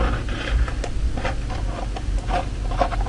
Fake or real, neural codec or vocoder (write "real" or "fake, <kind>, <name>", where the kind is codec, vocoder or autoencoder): real